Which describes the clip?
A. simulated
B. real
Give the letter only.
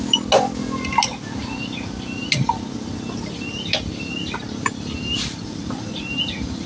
B